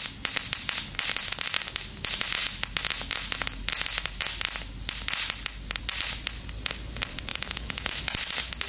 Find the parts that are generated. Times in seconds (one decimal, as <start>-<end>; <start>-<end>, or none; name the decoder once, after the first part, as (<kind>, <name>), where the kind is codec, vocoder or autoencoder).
7.3-8.0 (autoencoder, DAC-VAE)